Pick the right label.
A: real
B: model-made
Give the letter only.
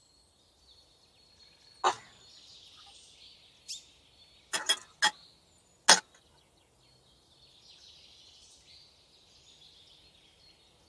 A